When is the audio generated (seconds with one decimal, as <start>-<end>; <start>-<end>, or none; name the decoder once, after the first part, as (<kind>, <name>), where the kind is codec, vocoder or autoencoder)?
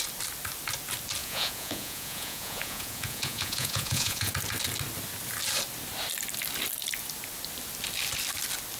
1.2-4.3 (vocoder, Vocos)